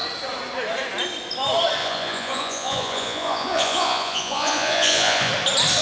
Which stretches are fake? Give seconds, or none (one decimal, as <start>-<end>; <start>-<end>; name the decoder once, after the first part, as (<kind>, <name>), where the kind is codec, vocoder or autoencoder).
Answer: 1.8-5.3 (vocoder, Vocos)